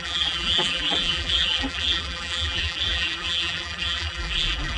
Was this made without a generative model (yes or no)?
no